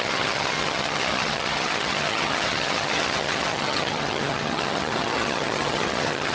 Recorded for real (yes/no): no